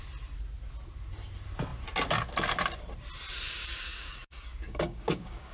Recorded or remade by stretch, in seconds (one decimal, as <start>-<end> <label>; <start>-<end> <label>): 0.0-3.6 recorded; 3.6-5.5 remade